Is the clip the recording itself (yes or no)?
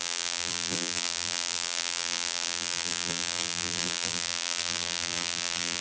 no